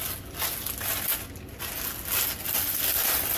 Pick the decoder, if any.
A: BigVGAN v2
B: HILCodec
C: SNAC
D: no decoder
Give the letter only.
D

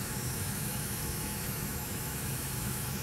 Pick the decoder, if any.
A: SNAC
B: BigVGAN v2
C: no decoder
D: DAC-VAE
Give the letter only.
D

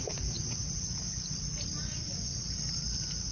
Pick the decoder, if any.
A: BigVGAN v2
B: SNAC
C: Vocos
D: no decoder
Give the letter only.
A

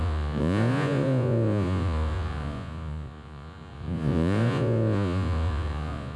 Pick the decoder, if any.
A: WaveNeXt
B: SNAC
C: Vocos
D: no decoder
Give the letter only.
C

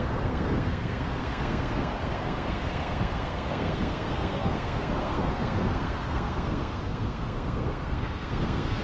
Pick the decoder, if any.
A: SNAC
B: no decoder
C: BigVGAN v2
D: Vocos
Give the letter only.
A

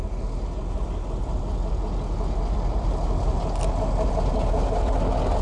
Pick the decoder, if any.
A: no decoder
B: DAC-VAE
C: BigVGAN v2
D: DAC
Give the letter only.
A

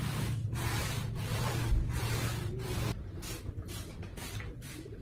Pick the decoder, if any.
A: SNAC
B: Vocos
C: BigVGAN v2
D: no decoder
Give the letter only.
C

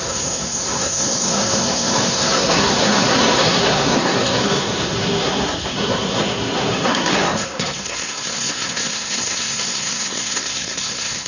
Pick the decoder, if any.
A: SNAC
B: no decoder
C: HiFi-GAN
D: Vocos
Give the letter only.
A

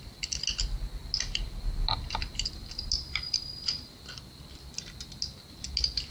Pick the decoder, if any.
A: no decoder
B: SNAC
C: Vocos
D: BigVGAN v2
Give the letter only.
A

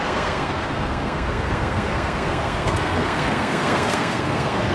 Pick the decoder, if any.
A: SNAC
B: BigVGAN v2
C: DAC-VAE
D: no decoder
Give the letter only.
A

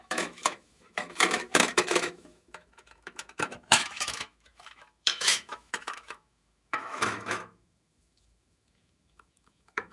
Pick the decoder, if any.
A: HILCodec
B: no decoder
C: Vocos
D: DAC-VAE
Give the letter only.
D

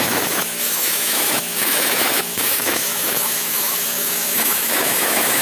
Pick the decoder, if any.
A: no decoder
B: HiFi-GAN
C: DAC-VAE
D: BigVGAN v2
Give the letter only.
C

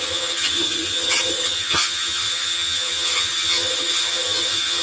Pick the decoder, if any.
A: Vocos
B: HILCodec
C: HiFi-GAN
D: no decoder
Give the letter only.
C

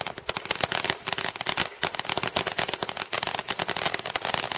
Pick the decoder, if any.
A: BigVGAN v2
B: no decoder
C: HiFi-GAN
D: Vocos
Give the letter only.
B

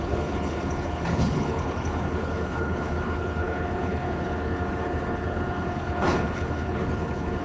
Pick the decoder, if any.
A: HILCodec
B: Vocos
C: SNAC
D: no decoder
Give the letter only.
A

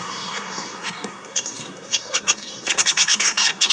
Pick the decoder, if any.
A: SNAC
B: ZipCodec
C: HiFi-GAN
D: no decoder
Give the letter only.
A